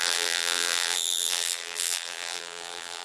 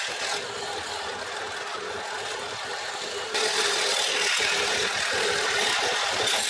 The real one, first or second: second